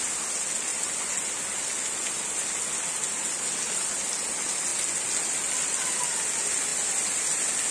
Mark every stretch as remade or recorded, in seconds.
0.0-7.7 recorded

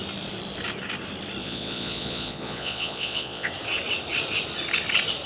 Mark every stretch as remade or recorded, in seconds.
0.0-1.4 recorded; 1.4-3.5 remade; 3.5-5.3 recorded

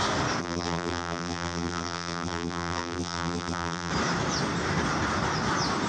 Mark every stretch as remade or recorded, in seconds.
0.0-0.4 recorded; 0.4-3.9 remade; 3.9-5.9 recorded

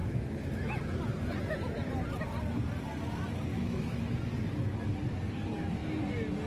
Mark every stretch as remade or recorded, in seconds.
0.0-1.0 remade; 1.0-3.5 recorded; 3.5-4.0 remade; 4.0-6.5 recorded

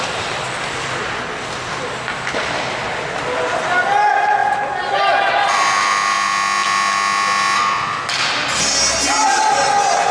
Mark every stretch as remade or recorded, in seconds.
0.0-10.1 recorded

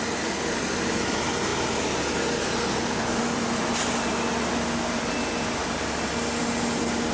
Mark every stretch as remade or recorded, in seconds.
0.0-5.6 recorded; 5.6-6.1 remade; 6.1-7.1 recorded

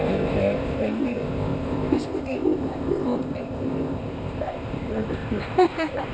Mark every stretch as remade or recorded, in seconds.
0.0-6.1 remade